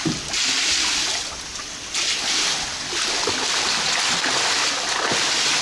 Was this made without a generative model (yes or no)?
yes